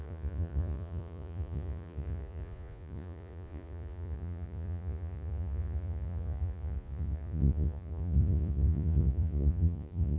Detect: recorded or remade remade